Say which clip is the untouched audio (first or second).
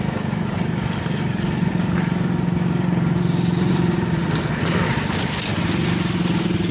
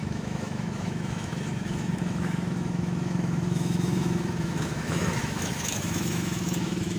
first